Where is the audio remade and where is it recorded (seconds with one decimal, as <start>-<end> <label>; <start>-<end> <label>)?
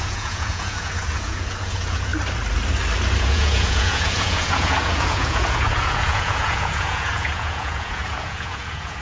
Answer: 0.0-2.1 remade; 2.1-3.2 recorded; 3.2-9.0 remade